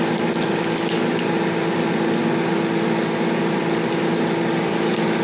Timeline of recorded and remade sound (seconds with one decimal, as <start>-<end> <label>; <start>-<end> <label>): 0.0-5.2 recorded